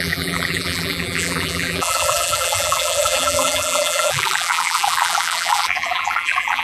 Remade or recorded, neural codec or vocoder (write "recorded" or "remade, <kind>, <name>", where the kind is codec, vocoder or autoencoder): remade, vocoder, BigVGAN v2